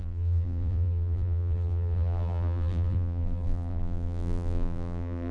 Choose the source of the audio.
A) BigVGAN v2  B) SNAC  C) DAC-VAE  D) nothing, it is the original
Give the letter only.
A